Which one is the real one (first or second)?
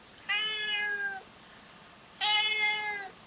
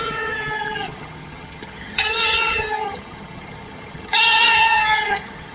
first